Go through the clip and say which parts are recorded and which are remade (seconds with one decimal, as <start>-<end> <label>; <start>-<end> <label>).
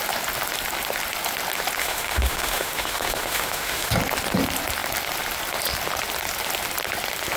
0.0-1.8 recorded; 1.8-3.9 remade; 3.9-7.4 recorded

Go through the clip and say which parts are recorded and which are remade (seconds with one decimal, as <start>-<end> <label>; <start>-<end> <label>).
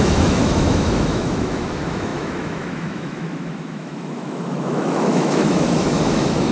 0.0-6.5 remade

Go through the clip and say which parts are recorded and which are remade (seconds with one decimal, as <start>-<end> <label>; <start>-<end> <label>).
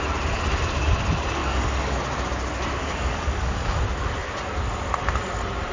0.0-1.4 recorded; 1.4-2.0 remade; 2.0-2.8 recorded; 2.8-3.8 remade; 3.8-5.7 recorded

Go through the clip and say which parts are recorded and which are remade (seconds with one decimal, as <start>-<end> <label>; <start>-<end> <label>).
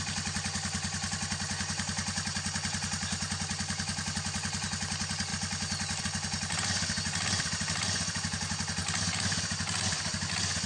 0.0-10.7 recorded